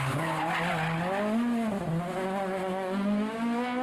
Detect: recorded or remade recorded